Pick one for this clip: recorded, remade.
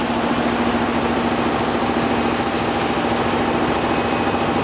recorded